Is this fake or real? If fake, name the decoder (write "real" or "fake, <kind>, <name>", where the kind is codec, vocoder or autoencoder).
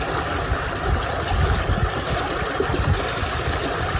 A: real